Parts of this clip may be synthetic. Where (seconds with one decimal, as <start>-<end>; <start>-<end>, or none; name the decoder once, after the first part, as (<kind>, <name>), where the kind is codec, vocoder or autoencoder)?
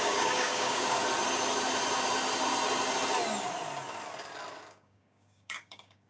0.0-1.0 (codec, DAC); 4.7-6.1